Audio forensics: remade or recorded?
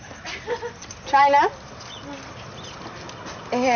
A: recorded